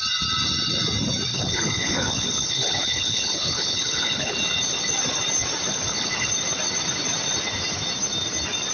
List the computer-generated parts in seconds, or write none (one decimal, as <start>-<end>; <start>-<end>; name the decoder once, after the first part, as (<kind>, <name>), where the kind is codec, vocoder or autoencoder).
1.3-4.3 (codec, HILCodec); 5.7-6.3